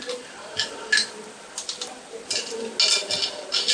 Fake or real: real